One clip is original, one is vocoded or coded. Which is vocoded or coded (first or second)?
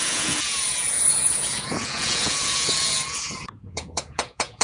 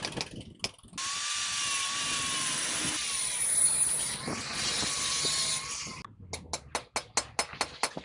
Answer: first